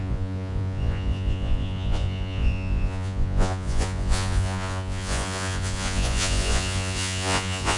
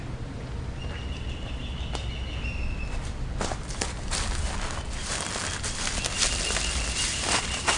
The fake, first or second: first